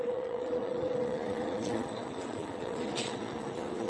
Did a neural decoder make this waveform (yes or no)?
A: yes